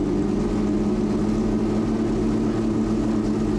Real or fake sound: real